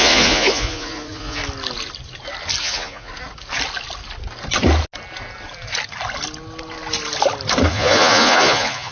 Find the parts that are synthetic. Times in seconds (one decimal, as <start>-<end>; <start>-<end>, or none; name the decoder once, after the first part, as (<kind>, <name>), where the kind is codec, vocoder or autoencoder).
0.0-1.4 (vocoder, Vocos); 2.6-3.1; 7.7-8.9

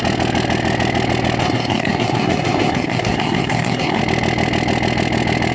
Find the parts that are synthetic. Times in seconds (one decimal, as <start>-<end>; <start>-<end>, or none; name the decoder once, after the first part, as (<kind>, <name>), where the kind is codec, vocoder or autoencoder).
1.4-4.0 (codec, SNAC)